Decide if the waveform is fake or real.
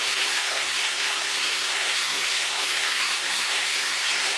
fake